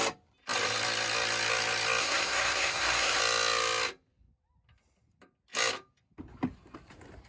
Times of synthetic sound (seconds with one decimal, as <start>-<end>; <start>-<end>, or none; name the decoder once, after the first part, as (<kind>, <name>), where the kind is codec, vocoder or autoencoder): 2.0-3.2 (codec, SNAC)